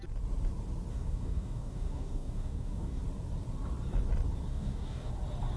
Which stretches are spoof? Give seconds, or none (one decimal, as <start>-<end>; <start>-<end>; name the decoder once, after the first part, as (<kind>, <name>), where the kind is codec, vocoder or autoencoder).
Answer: 0.9-3.0 (codec, DAC); 4.5-5.1